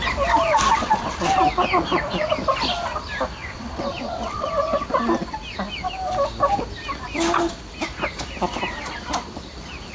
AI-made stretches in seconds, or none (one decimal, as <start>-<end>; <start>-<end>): 0.7-1.4; 3.4-4.5